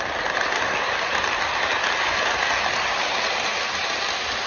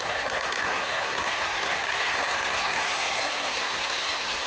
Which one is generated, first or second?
second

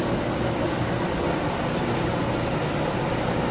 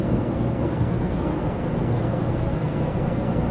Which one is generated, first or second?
second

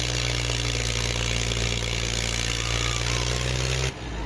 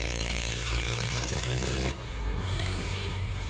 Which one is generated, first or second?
second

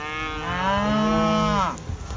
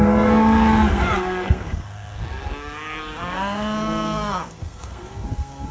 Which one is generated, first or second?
second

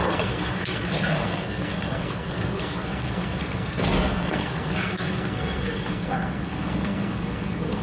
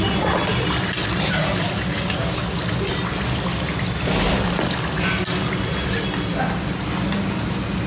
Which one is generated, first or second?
first